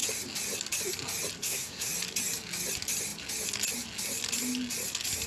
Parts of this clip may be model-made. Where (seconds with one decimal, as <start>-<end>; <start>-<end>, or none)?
1.4-1.9

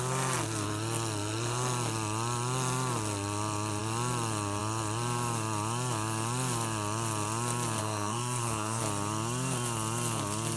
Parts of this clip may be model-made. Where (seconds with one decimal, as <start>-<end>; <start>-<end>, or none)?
7.8-8.8